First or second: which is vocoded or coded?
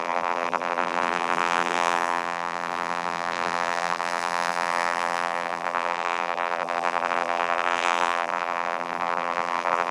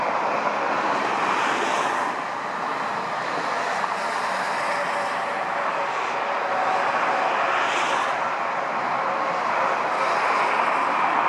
first